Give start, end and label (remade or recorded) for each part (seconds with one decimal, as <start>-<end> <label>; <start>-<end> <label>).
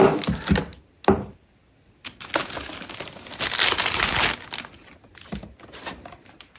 0.0-6.6 recorded